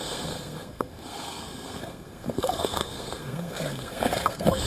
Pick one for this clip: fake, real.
fake